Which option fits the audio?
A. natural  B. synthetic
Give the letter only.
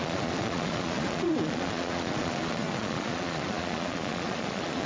B